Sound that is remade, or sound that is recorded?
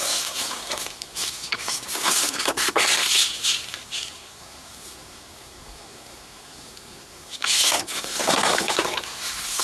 remade